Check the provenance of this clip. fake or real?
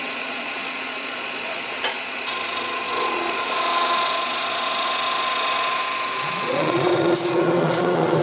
fake